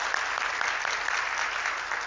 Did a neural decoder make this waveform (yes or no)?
no